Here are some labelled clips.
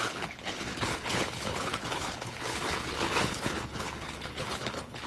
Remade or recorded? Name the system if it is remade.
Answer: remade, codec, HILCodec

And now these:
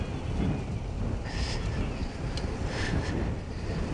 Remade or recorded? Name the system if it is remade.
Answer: recorded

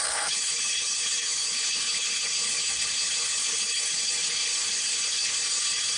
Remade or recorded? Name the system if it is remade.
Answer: remade, codec, HILCodec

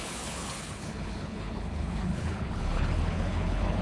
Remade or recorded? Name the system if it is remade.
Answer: remade, codec, HILCodec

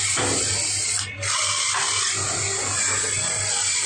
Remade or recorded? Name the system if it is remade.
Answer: recorded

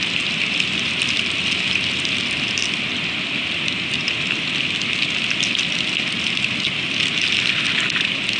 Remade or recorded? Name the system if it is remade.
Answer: recorded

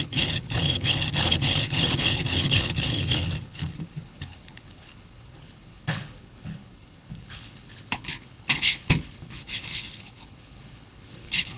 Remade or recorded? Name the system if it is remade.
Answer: remade, codec, HILCodec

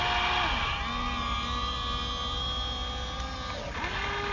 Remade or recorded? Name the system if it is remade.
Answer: recorded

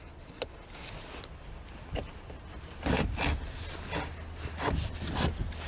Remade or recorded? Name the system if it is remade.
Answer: recorded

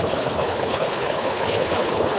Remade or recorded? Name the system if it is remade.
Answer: remade, codec, HILCodec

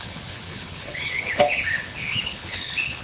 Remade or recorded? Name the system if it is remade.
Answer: remade, codec, HILCodec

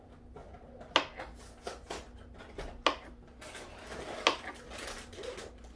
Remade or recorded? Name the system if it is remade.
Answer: recorded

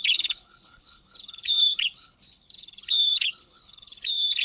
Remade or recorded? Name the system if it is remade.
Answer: remade, codec, HILCodec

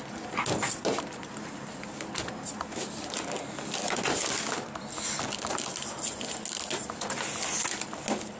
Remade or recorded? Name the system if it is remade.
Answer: recorded